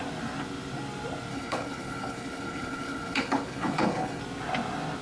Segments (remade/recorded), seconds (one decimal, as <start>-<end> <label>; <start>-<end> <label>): 0.0-1.3 recorded; 1.3-4.2 remade; 4.2-5.0 recorded